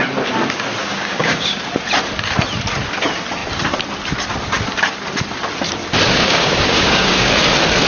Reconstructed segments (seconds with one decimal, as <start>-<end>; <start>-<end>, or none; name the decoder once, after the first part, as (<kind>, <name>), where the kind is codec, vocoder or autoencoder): 0.8-1.6 (codec, DAC); 6.1-7.3